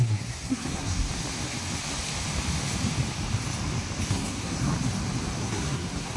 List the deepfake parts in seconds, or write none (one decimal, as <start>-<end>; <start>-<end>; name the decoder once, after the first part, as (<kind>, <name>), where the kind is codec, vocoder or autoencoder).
0.0-1.1 (codec, SNAC); 4.1-4.7; 5.4-6.2